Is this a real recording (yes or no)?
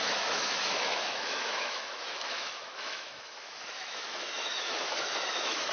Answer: no